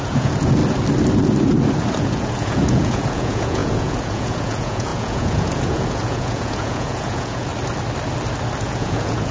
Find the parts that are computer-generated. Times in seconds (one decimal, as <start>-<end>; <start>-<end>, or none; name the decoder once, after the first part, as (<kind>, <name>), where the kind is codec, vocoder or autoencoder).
0.0-0.6 (vocoder, Vocos); 1.9-7.5; 8.6-9.3